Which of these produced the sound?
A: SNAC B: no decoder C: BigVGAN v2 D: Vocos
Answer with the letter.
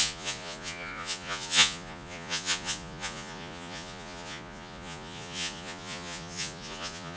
D